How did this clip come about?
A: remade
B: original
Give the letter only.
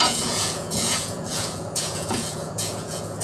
A